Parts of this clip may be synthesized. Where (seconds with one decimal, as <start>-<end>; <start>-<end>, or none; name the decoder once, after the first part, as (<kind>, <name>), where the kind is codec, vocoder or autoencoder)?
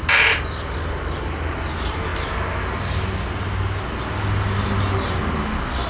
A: none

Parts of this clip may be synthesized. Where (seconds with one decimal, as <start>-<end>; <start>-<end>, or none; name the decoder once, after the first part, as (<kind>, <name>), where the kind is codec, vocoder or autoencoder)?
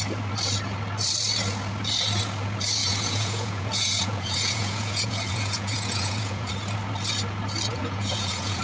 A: 2.8-6.5 (vocoder, Vocos); 7.7-8.6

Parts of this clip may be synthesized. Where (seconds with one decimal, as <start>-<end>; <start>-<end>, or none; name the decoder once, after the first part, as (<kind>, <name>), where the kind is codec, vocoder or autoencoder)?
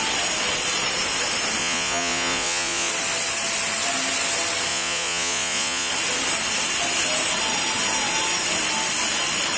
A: 1.6-2.9 (vocoder, Vocos); 4.7-5.9